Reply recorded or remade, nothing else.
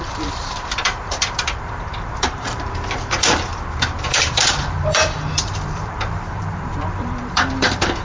remade